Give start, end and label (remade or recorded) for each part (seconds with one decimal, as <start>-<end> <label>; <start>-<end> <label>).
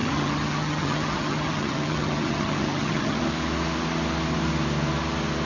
0.0-3.2 remade; 3.2-5.4 recorded